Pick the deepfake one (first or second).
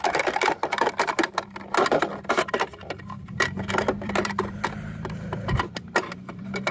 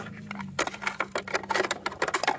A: first